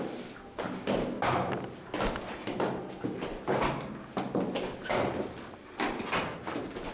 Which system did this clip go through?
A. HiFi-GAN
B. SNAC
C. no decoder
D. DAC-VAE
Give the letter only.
C